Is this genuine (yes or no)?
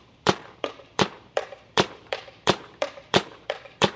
no